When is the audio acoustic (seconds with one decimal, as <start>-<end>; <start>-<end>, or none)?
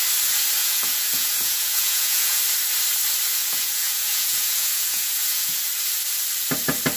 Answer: 0.0-0.6; 2.4-3.4; 5.7-7.0